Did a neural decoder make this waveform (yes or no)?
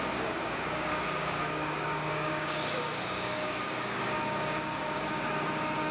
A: yes